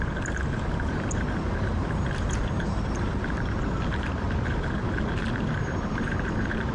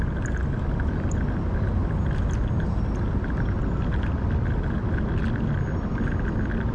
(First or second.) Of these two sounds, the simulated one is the first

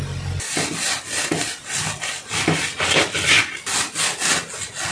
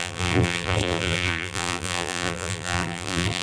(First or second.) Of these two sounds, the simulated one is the second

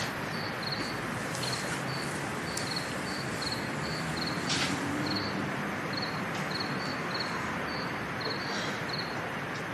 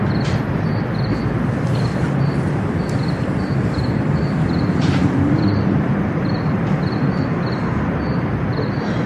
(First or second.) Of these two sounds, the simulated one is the second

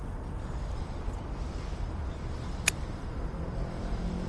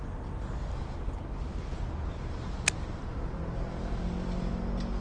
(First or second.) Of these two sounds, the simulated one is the first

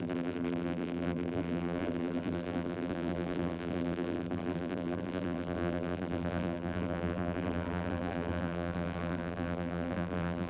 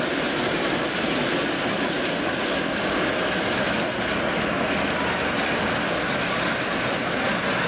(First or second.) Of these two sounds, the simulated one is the first